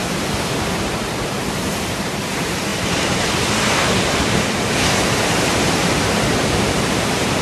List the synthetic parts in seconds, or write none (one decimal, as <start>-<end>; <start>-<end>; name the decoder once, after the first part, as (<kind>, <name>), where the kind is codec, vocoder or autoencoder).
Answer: 1.7-7.4 (vocoder, BigVGAN v2)